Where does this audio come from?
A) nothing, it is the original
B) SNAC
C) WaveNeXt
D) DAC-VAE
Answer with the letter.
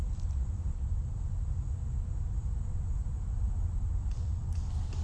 A